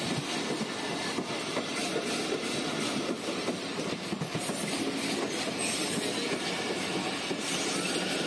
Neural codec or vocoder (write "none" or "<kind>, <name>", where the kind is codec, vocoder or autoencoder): none